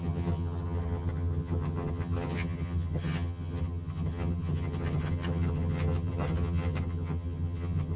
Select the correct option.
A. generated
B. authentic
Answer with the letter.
A